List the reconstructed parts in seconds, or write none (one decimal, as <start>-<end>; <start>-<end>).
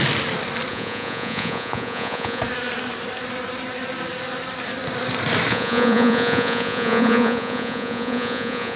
0.7-2.4; 5.5-8.8